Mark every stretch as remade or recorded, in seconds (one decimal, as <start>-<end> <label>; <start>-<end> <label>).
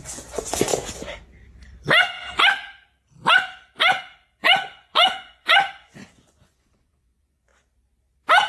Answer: 0.0-0.7 remade; 0.7-4.4 recorded; 4.4-7.5 remade; 7.5-8.5 recorded